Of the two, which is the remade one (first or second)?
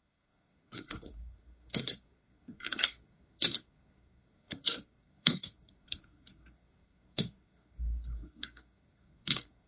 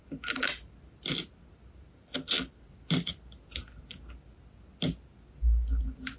first